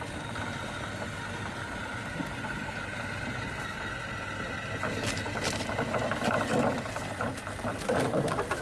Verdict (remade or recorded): recorded